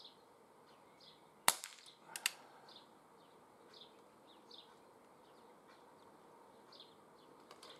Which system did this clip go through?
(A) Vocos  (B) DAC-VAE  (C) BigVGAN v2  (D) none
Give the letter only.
D